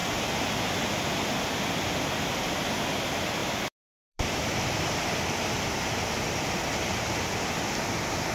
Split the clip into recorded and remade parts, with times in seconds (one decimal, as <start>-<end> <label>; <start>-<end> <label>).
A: 0.0-1.1 remade; 1.1-3.4 recorded; 3.4-5.2 remade; 5.2-8.3 recorded